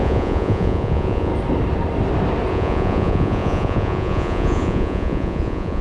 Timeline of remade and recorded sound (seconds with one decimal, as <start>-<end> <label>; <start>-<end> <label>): 0.0-1.3 remade; 1.3-2.5 recorded; 2.5-5.8 remade